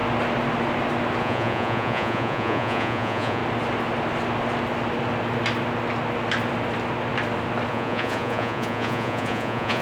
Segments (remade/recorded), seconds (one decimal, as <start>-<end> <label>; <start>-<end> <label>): 0.0-1.2 recorded; 1.2-3.4 remade; 3.4-7.7 recorded; 7.7-9.8 remade